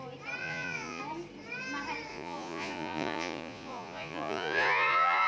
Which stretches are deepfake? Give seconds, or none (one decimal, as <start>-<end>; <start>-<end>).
0.4-1.0; 2.1-5.3